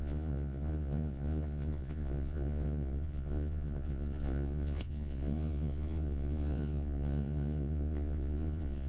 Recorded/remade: remade